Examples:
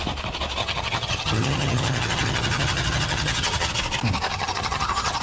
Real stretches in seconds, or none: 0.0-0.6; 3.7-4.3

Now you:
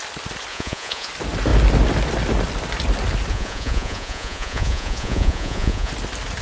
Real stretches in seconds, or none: 0.0-0.5; 1.1-3.3; 5.9-6.4

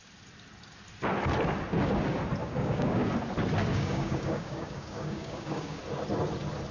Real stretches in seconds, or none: 0.0-2.4; 3.1-3.7; 5.8-6.7

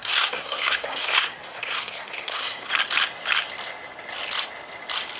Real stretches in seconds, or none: 2.7-5.2

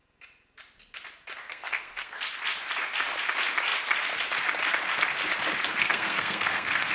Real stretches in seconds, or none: 0.0-1.4; 2.2-5.8

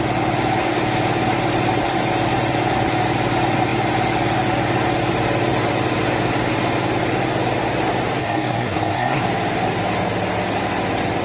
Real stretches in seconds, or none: 0.0-8.2; 9.2-11.2

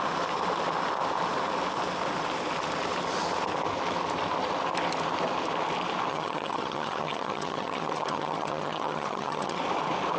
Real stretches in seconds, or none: 0.0-6.1; 9.6-10.2